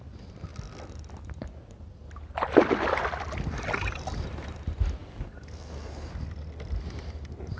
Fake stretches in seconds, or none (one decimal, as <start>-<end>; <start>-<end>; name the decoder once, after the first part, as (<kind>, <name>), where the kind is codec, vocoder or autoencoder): 5.0-6.1 (codec, DAC)

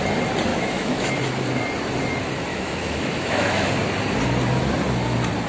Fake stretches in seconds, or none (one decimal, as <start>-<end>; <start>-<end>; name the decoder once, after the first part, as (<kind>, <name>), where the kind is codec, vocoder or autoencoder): 0.5-1.1 (autoencoder, DAC-VAE); 2.5-3.7

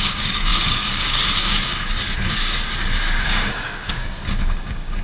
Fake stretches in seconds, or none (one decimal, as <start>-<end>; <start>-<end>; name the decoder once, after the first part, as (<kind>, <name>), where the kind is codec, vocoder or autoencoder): 0.0-5.0 (codec, DAC)

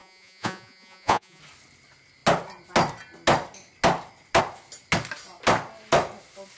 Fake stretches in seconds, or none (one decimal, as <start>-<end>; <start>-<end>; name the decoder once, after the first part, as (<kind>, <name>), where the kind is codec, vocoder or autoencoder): 0.0-1.4 (vocoder, Vocos)

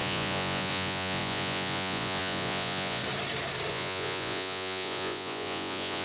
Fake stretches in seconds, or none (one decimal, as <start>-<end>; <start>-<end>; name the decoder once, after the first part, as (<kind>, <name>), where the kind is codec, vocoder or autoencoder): 0.0-3.0 (vocoder, Vocos); 3.7-6.0